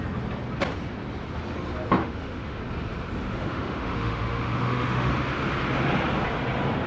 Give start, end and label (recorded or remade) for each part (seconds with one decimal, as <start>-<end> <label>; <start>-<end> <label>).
0.0-2.0 recorded; 2.0-2.6 remade; 2.6-3.2 recorded; 3.2-5.1 remade; 5.1-6.9 recorded